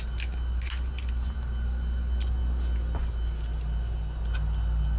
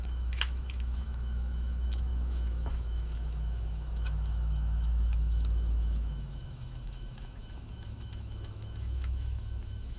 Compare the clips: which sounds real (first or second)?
first